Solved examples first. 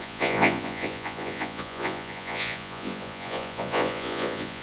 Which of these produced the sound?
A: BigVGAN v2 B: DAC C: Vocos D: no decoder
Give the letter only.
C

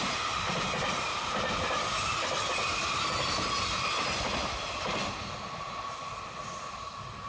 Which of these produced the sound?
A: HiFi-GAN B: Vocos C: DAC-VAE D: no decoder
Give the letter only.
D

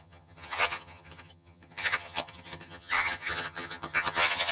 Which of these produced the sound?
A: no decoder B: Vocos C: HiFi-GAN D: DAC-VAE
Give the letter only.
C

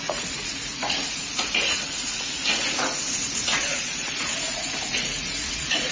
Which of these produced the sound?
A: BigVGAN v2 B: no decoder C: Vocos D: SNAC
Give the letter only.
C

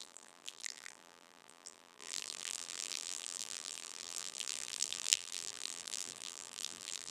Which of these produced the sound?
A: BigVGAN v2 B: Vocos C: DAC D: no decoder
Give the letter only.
A